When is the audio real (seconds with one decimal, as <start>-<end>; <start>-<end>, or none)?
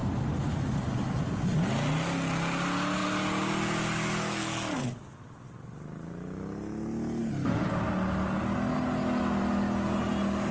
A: 0.0-10.5